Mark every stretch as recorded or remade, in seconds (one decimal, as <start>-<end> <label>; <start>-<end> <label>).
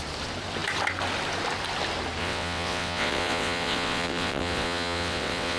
0.0-2.2 recorded; 2.2-5.6 remade